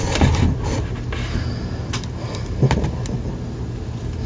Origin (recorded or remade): recorded